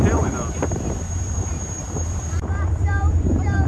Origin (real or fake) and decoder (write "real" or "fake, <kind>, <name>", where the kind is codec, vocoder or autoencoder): fake, vocoder, BigVGAN v2